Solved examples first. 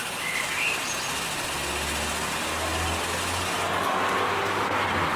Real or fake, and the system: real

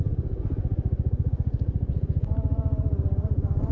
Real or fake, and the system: fake, vocoder, BigVGAN v2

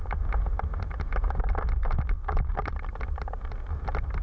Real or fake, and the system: real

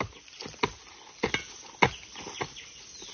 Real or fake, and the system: real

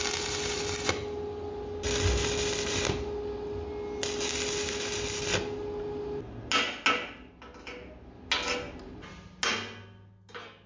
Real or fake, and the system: real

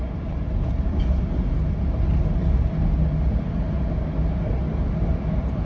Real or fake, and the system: real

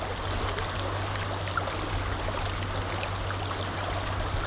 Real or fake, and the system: real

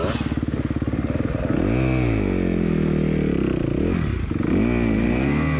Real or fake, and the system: real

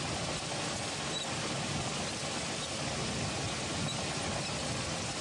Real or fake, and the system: real